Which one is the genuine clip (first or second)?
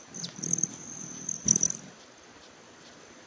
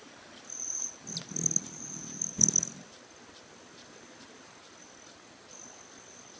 second